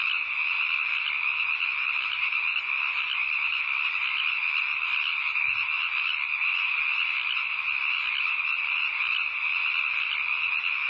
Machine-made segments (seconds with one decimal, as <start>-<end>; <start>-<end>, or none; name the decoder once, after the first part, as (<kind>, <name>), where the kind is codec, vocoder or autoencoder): none